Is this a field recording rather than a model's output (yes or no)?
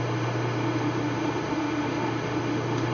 no